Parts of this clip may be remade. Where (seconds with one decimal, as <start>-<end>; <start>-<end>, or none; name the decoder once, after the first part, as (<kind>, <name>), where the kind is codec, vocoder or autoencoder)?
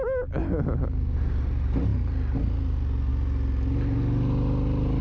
none